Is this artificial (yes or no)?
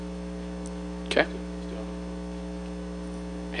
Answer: no